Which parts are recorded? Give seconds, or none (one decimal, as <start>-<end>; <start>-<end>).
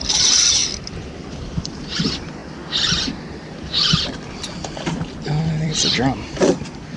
2.4-5.4